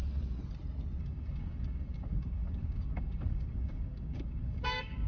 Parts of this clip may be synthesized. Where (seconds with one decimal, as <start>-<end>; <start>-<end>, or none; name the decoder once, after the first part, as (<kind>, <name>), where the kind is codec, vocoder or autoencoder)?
1.0-5.1 (codec, DAC)